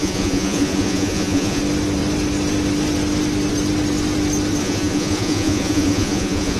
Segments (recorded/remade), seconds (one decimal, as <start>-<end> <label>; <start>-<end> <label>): 0.0-1.6 remade; 1.6-4.6 recorded; 4.6-6.6 remade